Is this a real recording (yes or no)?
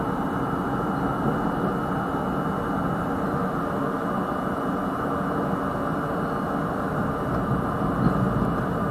yes